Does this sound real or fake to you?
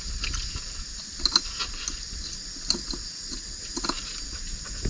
real